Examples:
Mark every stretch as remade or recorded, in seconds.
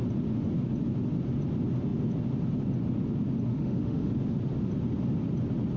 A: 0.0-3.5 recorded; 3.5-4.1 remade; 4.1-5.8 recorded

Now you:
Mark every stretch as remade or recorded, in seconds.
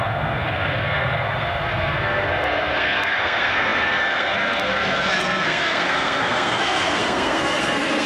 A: 0.0-8.1 remade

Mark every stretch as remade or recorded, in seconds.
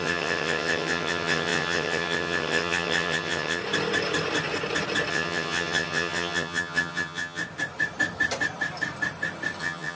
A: 0.0-3.6 remade; 3.6-5.1 recorded; 5.1-7.4 remade; 7.4-9.6 recorded; 9.6-10.0 remade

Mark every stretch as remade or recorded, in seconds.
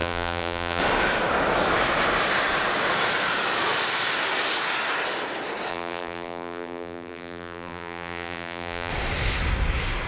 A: 0.0-0.8 remade; 0.8-5.7 recorded; 5.7-8.9 remade; 8.9-10.1 recorded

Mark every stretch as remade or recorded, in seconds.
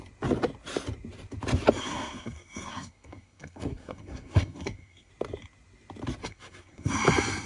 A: 0.0-1.8 recorded; 1.8-5.1 remade; 5.1-6.2 recorded; 6.2-6.9 remade; 6.9-7.5 recorded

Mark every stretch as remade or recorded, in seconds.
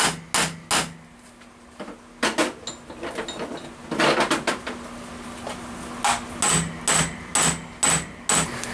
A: 0.0-8.7 recorded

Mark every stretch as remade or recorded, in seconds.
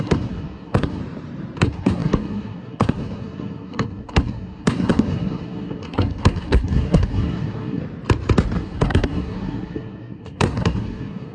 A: 0.0-1.0 remade; 1.0-1.6 recorded; 1.6-7.8 remade; 7.8-8.6 recorded; 8.6-11.3 remade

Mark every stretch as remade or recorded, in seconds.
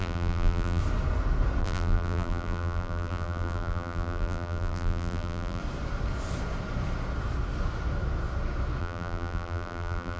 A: 0.0-0.8 remade; 0.8-1.6 recorded; 1.6-5.6 remade; 5.6-8.8 recorded; 8.8-10.2 remade